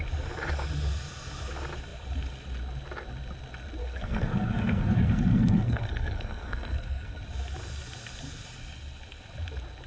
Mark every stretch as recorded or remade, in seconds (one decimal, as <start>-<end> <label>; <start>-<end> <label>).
0.0-3.8 recorded; 3.8-7.2 remade; 7.2-9.9 recorded